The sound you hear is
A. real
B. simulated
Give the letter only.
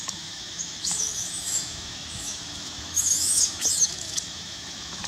B